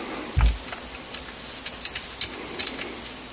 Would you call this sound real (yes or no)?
yes